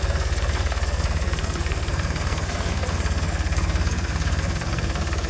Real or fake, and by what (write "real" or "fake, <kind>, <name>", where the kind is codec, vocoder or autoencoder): fake, codec, SNAC